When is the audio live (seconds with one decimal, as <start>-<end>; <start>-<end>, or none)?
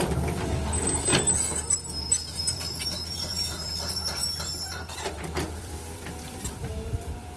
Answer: 1.1-2.4; 4.2-5.1